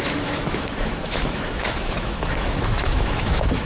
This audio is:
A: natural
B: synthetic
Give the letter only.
B